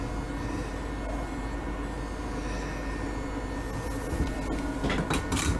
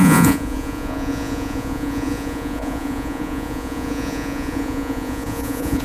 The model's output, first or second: second